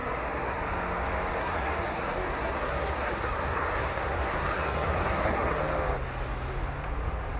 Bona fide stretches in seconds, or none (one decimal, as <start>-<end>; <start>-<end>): 0.6-1.4; 5.6-7.4